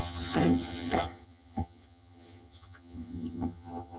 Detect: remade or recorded remade